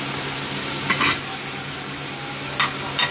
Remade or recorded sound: recorded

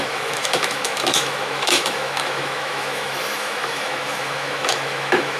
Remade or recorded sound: remade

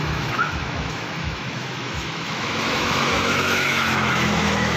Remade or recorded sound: remade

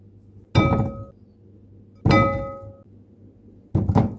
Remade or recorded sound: recorded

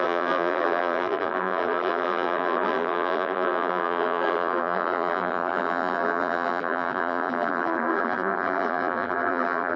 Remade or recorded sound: remade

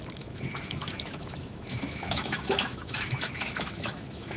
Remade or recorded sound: remade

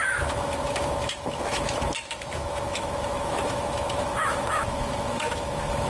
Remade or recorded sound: remade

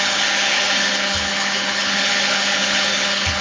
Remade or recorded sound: remade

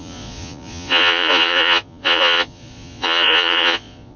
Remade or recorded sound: remade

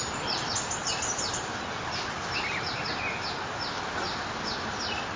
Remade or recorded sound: recorded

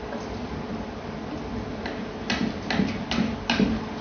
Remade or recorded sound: recorded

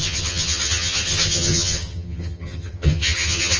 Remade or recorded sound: remade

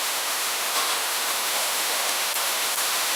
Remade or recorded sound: remade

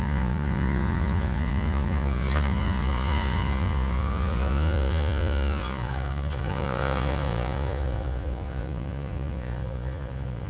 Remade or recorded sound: remade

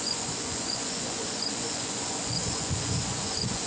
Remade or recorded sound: remade